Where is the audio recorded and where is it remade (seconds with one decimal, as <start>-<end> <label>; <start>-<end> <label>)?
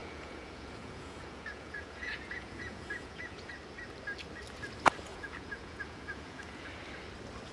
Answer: 0.0-3.5 remade; 3.5-5.1 recorded; 5.1-6.7 remade; 6.7-7.5 recorded